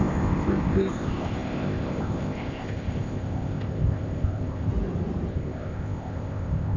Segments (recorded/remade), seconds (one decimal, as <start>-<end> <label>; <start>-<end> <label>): 0.0-4.7 remade; 4.7-5.3 recorded; 5.3-6.8 remade